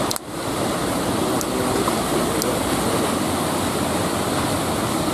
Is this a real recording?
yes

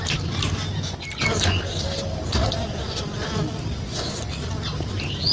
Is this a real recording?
yes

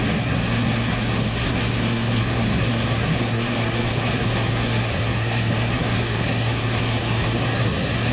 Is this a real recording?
no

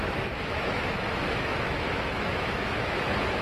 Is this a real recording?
no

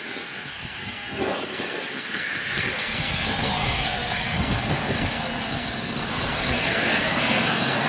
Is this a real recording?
no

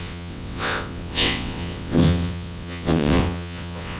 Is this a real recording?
no